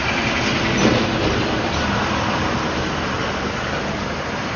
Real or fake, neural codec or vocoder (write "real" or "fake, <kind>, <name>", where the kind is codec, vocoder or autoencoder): real